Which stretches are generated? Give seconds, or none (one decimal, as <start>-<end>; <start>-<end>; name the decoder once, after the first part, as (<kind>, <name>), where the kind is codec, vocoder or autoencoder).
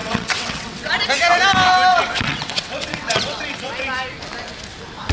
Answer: 0.0-0.9 (vocoder, WaveNeXt); 1.9-3.7